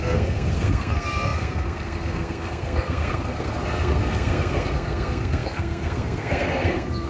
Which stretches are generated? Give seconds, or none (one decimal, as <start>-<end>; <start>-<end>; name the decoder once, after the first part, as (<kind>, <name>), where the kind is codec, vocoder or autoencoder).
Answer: 0.0-7.1 (codec, SNAC)